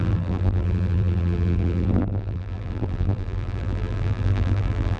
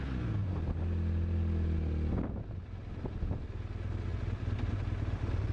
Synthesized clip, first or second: first